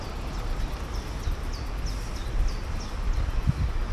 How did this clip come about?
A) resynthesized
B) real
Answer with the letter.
B